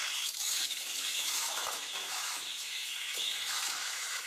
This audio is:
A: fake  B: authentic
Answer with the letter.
A